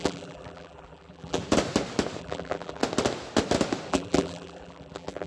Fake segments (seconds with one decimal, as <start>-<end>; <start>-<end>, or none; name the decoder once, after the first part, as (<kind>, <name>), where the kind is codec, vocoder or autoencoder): 0.0-1.4 (vocoder, BigVGAN v2); 2.2-2.8; 3.9-5.3